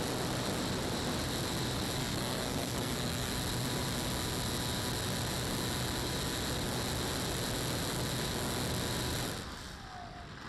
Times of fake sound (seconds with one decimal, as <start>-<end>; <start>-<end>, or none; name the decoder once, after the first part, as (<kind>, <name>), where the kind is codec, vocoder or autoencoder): 2.0-3.3 (codec, SNAC)